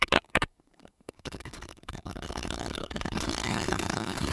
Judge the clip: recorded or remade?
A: remade